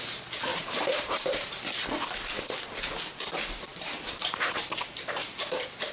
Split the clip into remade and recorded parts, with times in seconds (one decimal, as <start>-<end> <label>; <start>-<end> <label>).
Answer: 0.0-0.5 recorded; 0.5-1.5 remade; 1.5-3.7 recorded; 3.7-5.3 remade; 5.3-5.9 recorded